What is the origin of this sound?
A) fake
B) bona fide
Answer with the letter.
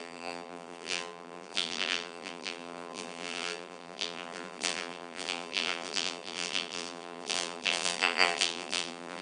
A